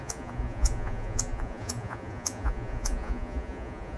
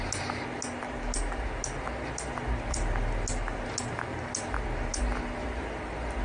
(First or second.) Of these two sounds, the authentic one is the second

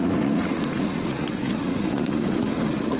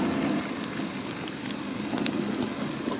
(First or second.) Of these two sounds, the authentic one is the second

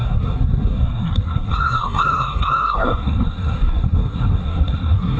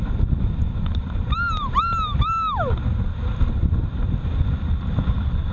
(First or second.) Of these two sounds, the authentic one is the second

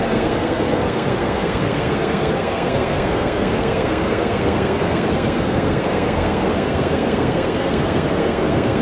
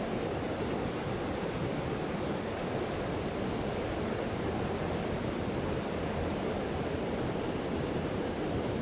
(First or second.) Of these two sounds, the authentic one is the second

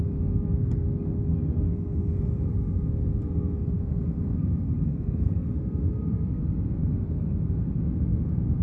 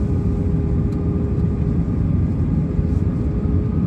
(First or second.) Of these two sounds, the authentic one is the second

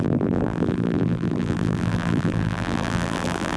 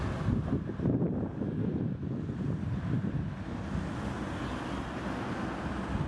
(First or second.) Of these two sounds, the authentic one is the second